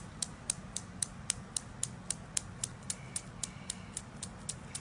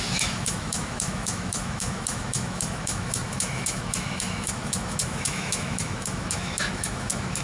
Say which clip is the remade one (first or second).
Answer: second